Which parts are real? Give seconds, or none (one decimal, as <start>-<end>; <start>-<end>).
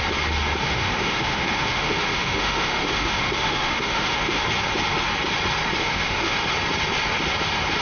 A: 0.0-0.6; 4.4-5.8; 6.5-7.8